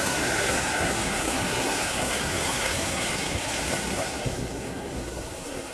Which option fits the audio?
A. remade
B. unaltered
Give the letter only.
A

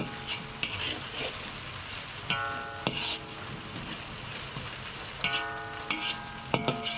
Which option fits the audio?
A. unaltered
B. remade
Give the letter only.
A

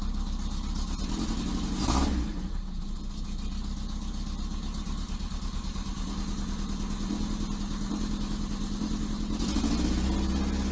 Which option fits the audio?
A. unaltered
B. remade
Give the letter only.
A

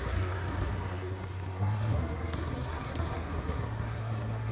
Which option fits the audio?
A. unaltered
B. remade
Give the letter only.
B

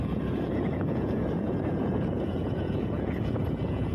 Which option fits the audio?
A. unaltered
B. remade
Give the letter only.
B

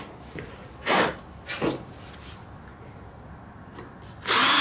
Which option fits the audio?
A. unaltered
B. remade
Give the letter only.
A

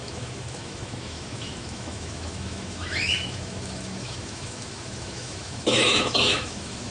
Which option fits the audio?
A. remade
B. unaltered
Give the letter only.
A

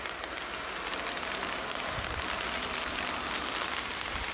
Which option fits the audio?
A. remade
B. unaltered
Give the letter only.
B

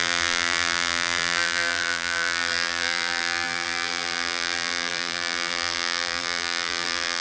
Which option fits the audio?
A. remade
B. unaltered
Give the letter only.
A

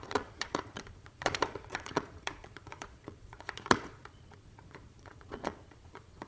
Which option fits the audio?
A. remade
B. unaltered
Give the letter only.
A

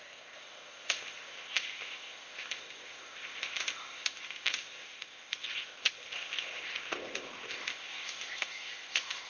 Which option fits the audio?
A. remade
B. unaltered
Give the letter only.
A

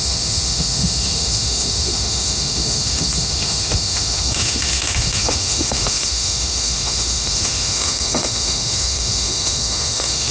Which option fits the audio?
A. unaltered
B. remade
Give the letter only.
B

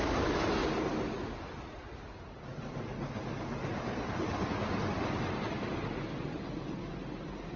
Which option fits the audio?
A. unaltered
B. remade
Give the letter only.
A